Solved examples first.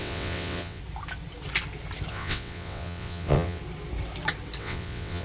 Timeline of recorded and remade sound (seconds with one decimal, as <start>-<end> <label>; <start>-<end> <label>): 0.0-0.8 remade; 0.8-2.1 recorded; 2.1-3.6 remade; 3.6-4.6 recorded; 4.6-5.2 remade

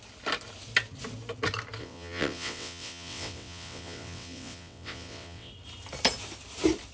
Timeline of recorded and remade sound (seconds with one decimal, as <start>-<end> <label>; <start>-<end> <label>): 0.0-1.8 recorded; 1.8-5.5 remade; 5.5-6.9 recorded

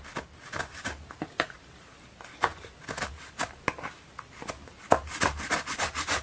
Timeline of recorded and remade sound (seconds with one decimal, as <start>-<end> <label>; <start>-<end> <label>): 0.0-6.2 recorded

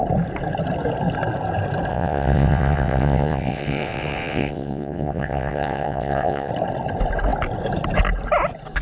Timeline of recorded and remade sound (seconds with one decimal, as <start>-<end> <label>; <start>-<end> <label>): 0.0-1.9 recorded; 1.9-6.5 remade; 6.5-8.8 recorded